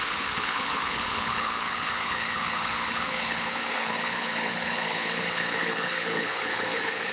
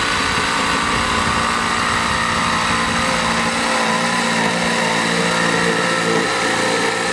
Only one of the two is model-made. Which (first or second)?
first